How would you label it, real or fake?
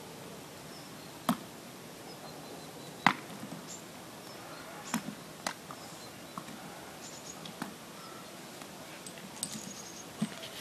real